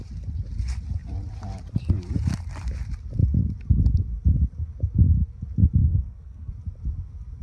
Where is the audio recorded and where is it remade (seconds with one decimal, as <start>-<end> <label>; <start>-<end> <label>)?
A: 0.0-5.8 recorded; 5.8-6.5 remade; 6.5-7.4 recorded